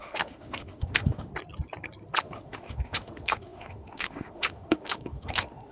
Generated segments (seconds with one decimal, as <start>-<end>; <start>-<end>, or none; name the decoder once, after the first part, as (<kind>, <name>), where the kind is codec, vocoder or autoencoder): 0.0-1.3 (autoencoder, DAC-VAE); 2.2-5.7